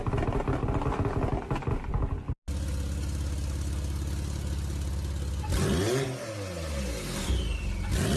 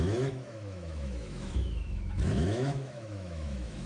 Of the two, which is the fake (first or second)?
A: second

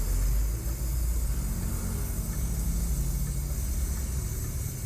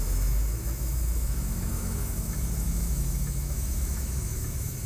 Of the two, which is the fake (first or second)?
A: second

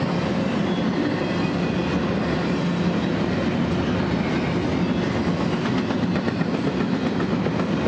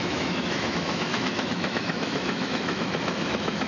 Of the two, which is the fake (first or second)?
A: second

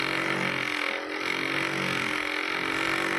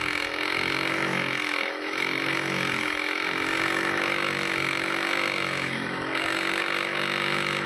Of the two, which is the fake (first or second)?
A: second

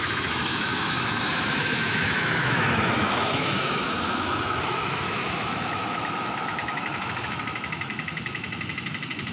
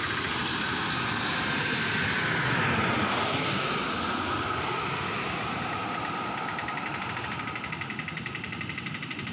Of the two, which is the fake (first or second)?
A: first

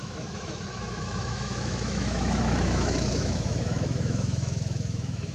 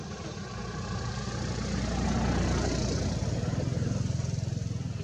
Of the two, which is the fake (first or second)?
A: first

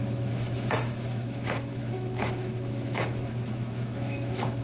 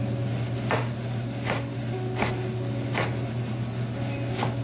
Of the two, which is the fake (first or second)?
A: first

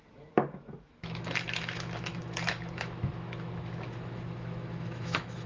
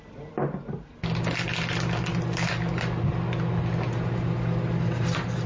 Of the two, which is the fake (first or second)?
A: first